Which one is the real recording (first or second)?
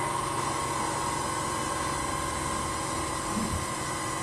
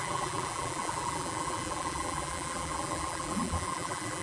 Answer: first